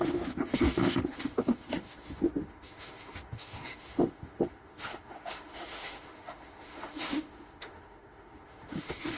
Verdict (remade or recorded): remade